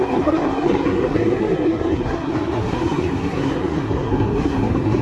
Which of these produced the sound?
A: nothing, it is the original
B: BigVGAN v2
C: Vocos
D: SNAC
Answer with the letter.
D